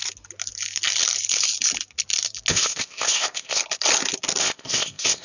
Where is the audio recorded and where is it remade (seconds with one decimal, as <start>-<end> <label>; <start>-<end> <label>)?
0.0-2.5 recorded; 2.5-3.6 remade; 3.6-4.4 recorded; 4.4-5.2 remade